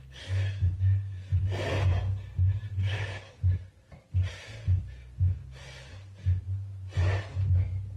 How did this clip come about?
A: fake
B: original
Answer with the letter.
B